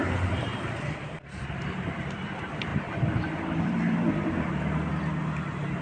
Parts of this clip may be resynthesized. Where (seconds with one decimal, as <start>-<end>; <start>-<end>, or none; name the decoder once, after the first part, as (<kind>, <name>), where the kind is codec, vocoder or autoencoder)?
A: 0.0-2.7 (vocoder, BigVGAN v2); 3.4-4.9